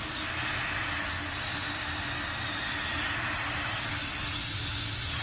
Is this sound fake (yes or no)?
no